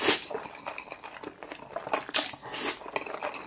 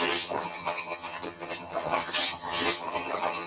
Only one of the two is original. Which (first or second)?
first